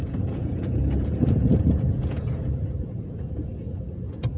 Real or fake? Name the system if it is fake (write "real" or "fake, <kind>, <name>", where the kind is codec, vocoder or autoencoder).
fake, vocoder, Vocos